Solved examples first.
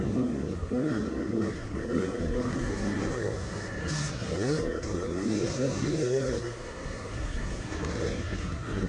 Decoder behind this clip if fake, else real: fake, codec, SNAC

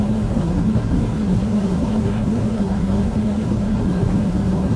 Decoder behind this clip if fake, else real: fake, codec, SNAC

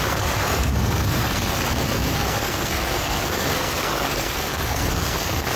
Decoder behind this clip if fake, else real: fake, codec, SNAC